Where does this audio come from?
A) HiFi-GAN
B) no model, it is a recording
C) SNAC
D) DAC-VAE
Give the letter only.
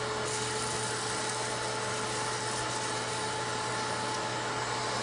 B